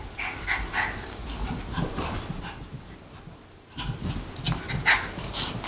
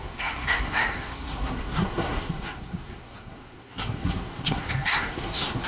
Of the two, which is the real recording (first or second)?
first